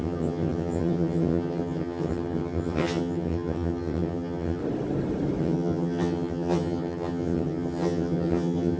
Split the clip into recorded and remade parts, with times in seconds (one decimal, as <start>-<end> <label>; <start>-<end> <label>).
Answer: 0.0-4.6 remade; 4.6-5.4 recorded; 5.4-8.8 remade